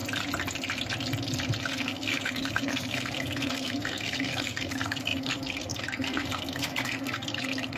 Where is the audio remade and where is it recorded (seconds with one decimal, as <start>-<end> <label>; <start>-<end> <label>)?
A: 0.0-1.6 recorded; 1.6-7.8 remade